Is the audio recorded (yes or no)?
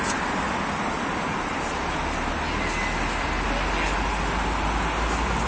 yes